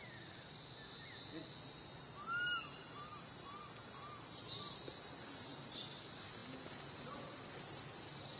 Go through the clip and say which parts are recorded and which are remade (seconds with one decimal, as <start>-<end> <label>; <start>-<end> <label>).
0.0-8.4 recorded